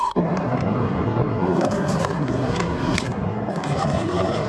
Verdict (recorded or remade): remade